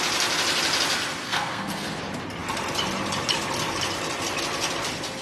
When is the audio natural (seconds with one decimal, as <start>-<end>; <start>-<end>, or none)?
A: 0.0-1.2; 2.0-5.2